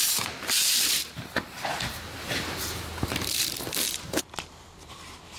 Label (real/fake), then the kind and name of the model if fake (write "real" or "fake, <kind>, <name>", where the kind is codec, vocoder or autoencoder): fake, vocoder, BigVGAN v2